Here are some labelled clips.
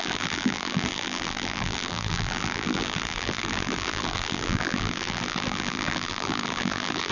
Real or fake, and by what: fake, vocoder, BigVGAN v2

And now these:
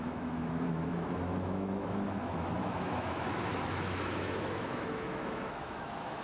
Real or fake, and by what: fake, autoencoder, DAC-VAE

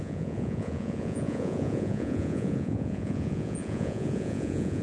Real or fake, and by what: fake, vocoder, Vocos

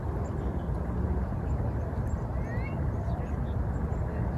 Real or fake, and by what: real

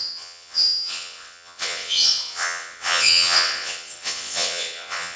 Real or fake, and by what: fake, vocoder, WaveNeXt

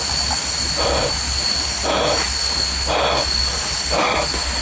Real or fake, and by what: real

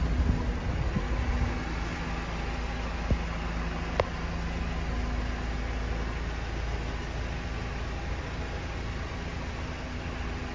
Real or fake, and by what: real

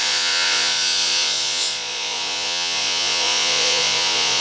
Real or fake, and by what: fake, vocoder, Vocos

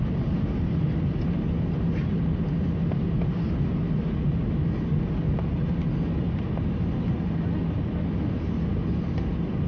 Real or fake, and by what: real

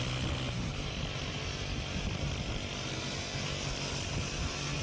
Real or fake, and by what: real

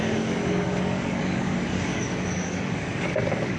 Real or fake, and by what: fake, codec, DAC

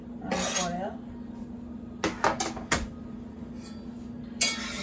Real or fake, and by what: real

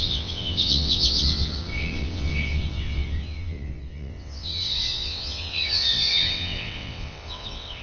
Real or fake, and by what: fake, vocoder, WaveNeXt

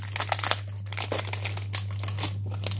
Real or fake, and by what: real